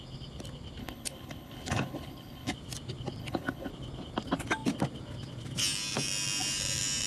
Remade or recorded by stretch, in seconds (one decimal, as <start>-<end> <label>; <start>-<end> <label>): 0.0-0.8 recorded; 0.8-2.5 remade; 2.5-3.2 recorded; 3.2-3.7 remade; 3.7-7.1 recorded